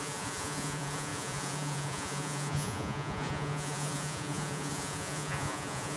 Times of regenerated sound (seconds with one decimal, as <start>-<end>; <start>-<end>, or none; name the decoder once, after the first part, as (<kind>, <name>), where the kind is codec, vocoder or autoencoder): 0.0-6.0 (vocoder, Vocos)